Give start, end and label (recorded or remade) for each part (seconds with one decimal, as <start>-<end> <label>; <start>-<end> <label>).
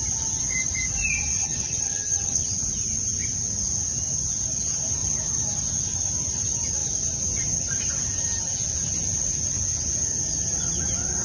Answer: 0.0-1.4 recorded; 1.4-2.5 remade; 2.5-11.2 recorded